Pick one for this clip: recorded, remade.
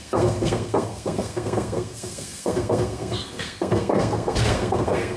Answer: remade